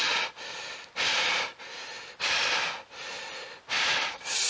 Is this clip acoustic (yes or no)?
yes